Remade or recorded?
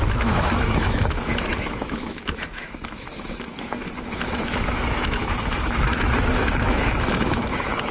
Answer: remade